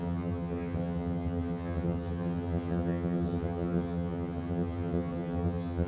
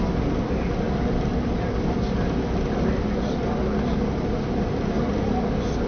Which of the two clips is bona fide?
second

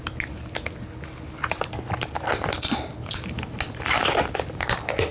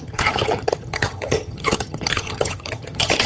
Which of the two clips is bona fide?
first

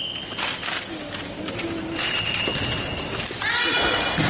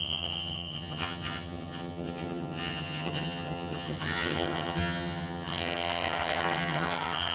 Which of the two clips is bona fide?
first